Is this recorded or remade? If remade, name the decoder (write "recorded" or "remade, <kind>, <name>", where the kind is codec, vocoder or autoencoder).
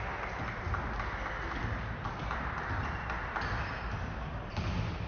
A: recorded